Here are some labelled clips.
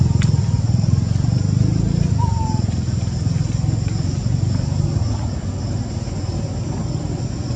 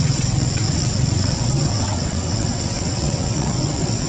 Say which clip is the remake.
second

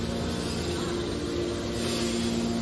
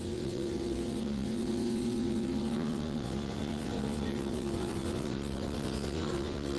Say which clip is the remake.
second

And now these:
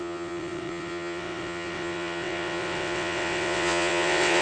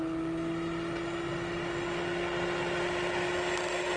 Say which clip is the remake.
first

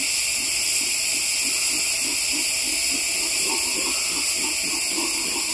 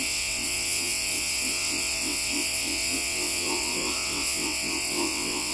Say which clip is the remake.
second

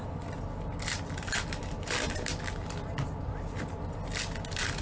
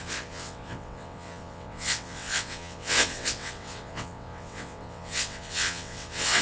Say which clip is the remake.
second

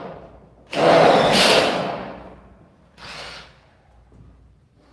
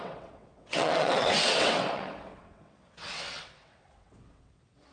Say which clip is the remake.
second